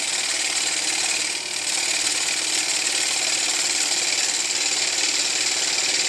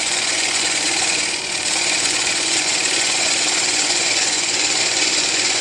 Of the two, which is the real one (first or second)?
first